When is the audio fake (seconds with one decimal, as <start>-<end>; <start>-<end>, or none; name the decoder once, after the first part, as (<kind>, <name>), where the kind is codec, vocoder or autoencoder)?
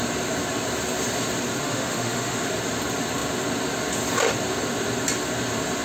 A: 1.6-2.5 (autoencoder, DAC-VAE)